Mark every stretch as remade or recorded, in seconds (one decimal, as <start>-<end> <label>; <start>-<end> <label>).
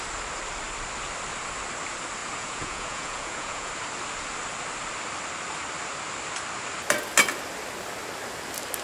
0.0-2.2 recorded; 2.2-3.7 remade; 3.7-8.8 recorded